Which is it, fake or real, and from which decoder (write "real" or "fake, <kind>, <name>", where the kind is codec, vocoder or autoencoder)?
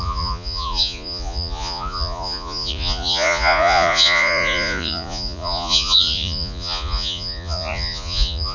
fake, vocoder, Vocos